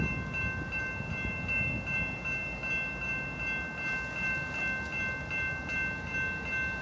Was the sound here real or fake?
real